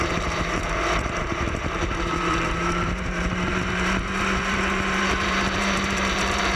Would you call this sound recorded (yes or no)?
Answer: no